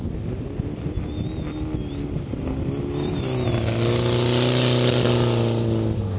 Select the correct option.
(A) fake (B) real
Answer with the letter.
B